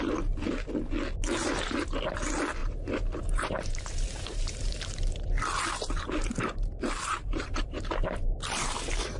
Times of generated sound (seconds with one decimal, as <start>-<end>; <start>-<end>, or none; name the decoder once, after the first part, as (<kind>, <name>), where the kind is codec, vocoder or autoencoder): 2.6-4.7 (vocoder, BigVGAN v2); 6.2-9.2